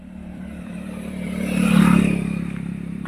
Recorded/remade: remade